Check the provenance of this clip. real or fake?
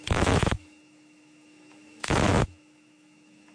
fake